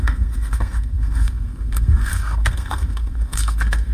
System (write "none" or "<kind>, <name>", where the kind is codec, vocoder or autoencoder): codec, SNAC